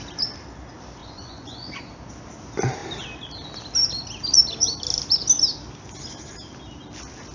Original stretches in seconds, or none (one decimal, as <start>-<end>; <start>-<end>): 0.0-1.0; 1.9-7.3